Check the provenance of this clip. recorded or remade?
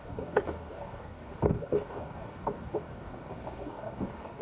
remade